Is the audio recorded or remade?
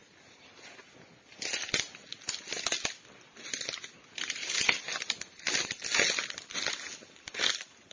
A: recorded